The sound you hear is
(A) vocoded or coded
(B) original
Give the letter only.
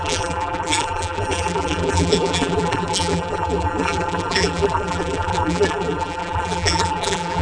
A